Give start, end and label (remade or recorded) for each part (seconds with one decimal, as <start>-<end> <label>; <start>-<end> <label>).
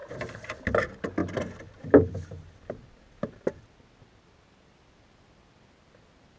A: 0.0-6.4 recorded